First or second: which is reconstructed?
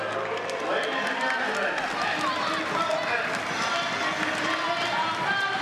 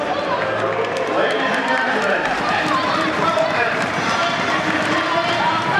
second